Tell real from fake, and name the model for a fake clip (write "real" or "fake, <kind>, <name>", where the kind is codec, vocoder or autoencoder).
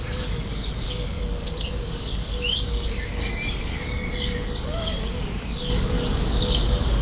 fake, codec, DAC